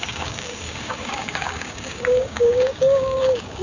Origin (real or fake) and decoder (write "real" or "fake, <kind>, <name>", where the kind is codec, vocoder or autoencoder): fake, codec, DAC